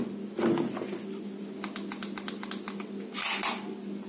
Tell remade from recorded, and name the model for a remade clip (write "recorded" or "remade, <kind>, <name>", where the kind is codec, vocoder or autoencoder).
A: recorded